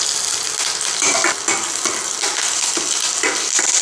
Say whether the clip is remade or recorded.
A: recorded